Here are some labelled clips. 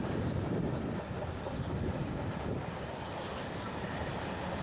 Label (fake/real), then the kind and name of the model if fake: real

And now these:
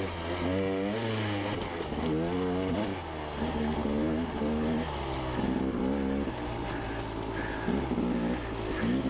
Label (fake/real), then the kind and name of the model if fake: real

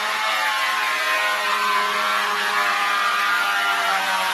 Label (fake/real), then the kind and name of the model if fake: fake, vocoder, Vocos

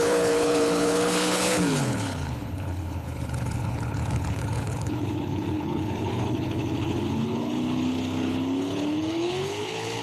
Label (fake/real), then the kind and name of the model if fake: fake, codec, HILCodec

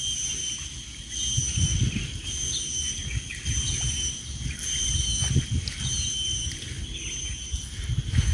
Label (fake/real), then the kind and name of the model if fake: real